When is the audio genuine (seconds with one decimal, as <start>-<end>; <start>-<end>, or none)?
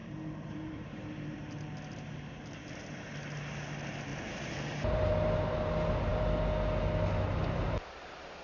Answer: 2.8-4.1; 5.1-8.4